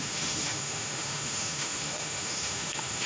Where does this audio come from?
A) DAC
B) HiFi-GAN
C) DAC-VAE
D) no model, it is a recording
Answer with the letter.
C